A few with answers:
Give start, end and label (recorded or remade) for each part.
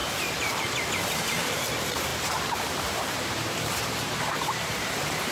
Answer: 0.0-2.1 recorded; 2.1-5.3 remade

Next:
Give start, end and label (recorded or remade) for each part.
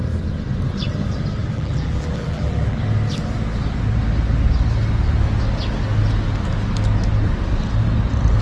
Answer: 0.0-1.4 recorded; 1.4-2.8 remade; 2.8-8.4 recorded